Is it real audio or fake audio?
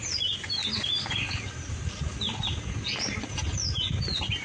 real